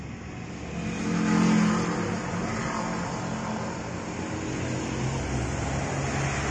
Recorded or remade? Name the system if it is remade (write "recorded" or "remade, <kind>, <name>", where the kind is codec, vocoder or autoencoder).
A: recorded